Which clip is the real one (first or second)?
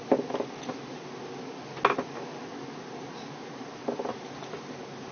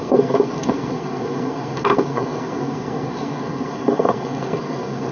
first